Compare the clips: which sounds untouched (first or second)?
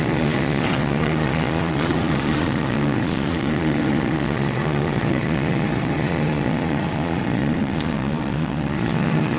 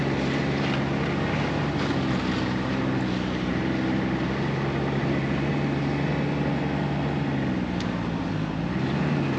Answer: second